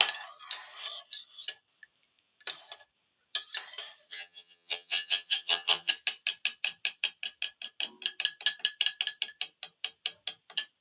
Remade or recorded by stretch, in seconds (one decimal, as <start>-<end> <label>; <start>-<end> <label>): 0.0-4.1 recorded; 4.1-5.9 remade; 5.9-10.8 recorded

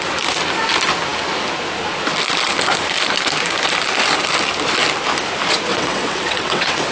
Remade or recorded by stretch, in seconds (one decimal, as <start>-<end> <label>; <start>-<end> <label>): 0.0-5.7 recorded; 5.7-6.9 remade

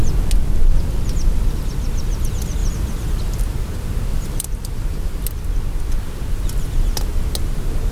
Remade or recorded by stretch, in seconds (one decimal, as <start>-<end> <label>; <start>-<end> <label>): 0.0-2.6 recorded; 2.6-3.4 remade; 3.4-4.1 recorded; 4.1-5.1 remade; 5.1-7.9 recorded